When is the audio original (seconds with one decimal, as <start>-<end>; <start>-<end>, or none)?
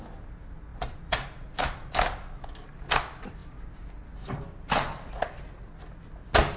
0.0-0.7; 1.5-6.6